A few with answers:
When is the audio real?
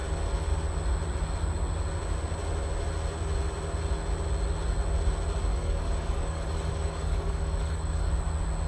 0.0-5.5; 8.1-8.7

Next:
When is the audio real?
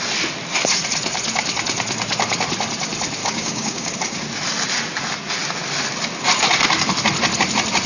0.0-3.2; 3.9-7.9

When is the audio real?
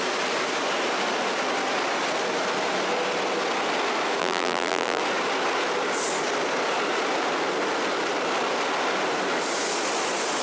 0.0-4.2; 5.0-10.4